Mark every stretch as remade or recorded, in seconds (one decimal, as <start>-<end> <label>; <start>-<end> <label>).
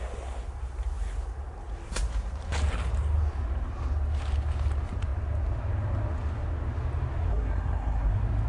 0.0-7.3 recorded; 7.3-8.1 remade; 8.1-8.5 recorded